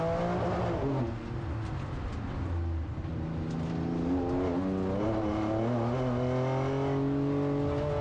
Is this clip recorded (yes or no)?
yes